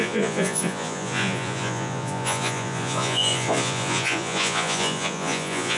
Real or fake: fake